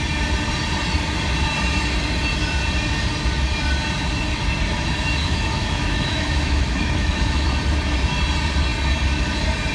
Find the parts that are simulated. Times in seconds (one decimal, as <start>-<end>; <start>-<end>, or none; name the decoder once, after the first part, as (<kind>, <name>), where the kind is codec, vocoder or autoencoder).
5.2-7.5 (autoencoder, DAC-VAE)